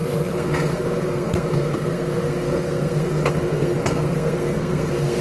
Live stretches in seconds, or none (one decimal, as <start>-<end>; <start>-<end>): none